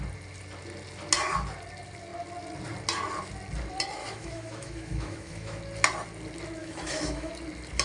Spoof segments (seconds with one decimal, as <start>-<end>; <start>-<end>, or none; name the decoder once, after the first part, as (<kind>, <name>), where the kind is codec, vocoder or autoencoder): 4.0-5.6 (autoencoder, DAC-VAE); 6.6-7.3